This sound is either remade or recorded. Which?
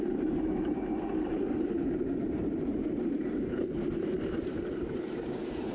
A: remade